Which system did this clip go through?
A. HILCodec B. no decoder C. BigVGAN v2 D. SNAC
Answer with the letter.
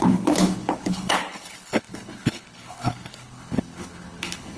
A